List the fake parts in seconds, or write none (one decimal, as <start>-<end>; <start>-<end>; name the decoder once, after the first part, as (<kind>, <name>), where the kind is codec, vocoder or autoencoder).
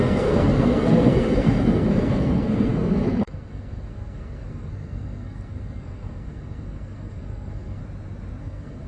0.0-7.8 (codec, SNAC); 8.4-8.9